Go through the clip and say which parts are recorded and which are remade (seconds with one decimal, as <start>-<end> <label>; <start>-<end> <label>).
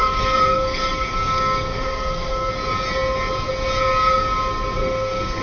0.0-2.5 remade; 2.5-4.8 recorded; 4.8-5.4 remade